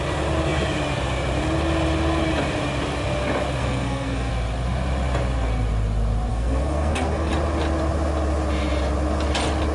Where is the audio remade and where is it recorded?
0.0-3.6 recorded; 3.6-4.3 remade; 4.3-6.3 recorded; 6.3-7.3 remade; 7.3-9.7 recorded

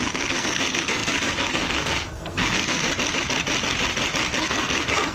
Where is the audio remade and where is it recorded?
0.0-2.9 remade; 2.9-4.4 recorded; 4.4-5.1 remade

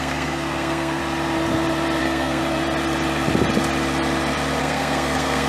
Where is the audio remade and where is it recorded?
0.0-1.0 remade; 1.0-2.0 recorded; 2.0-2.4 remade; 2.4-4.6 recorded; 4.6-5.5 remade

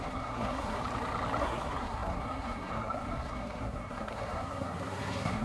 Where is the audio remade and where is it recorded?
0.0-0.8 remade; 0.8-1.4 recorded; 1.4-5.4 remade

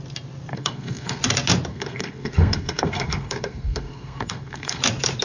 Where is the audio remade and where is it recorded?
0.0-0.5 recorded; 0.5-1.2 remade; 1.2-1.7 recorded; 1.7-4.8 remade; 4.8-5.2 recorded

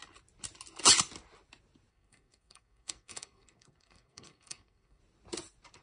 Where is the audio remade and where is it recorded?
0.0-1.9 recorded; 1.9-5.0 remade; 5.0-5.8 recorded

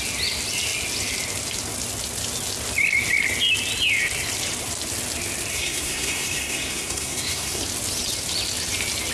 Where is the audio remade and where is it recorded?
0.0-5.5 recorded; 5.5-7.6 remade; 7.6-9.1 recorded

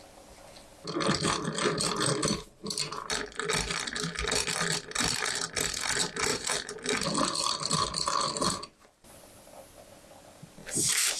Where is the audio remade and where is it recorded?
0.0-11.2 recorded